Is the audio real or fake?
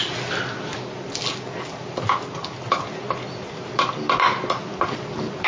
real